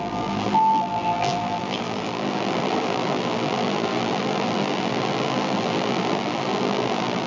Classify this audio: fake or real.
fake